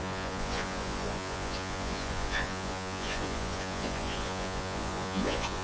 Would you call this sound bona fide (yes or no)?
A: no